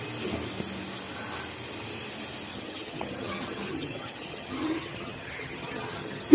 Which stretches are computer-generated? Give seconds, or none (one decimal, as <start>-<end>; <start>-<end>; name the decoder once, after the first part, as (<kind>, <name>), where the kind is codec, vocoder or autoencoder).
2.5-6.3 (vocoder, HiFi-GAN)